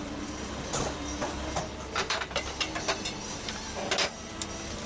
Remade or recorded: recorded